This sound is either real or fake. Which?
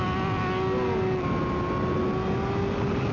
real